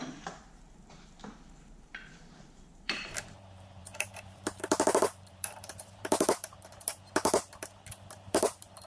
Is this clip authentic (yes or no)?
no